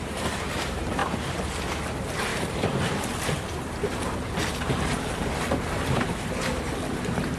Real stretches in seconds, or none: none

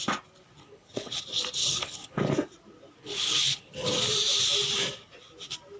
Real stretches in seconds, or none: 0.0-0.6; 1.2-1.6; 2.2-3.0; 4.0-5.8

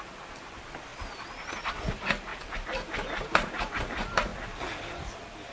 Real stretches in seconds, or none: 0.0-2.3; 3.7-5.5